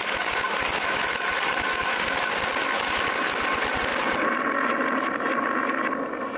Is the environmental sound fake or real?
real